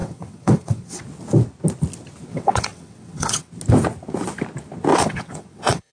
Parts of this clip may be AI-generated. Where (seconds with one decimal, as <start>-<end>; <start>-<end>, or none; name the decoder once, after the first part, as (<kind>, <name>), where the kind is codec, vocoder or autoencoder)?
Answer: 0.0-1.0 (vocoder, WaveNeXt); 2.3-3.5; 4.9-5.9